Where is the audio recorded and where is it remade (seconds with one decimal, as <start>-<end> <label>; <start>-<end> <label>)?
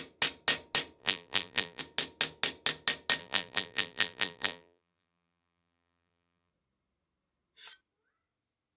0.0-1.0 recorded; 1.0-1.8 remade; 1.8-3.2 recorded; 3.2-6.5 remade; 6.5-8.8 recorded